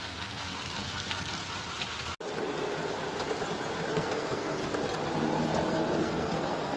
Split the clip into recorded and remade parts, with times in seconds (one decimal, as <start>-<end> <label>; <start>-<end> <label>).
0.0-1.4 remade; 1.4-3.9 recorded; 3.9-4.6 remade; 4.6-5.7 recorded; 5.7-6.8 remade